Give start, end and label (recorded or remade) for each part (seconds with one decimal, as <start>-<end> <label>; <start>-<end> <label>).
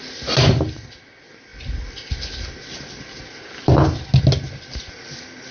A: 0.0-5.5 recorded